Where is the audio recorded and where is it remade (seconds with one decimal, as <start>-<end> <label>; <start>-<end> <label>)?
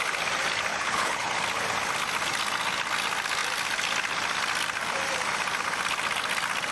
0.0-0.7 recorded; 0.7-1.3 remade; 1.3-6.7 recorded